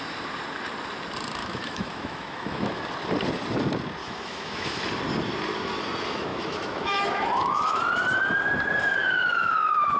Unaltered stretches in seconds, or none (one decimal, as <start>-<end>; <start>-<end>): 0.0-1.4; 2.8-4.0; 4.8-6.3; 7.8-9.0